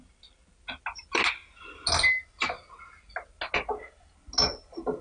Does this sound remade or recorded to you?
recorded